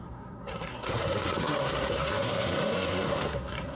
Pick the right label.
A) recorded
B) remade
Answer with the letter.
B